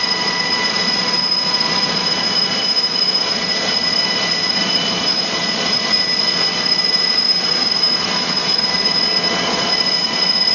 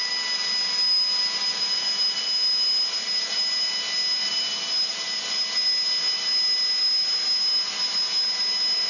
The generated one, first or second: first